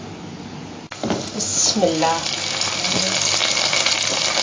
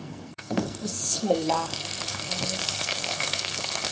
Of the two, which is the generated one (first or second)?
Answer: second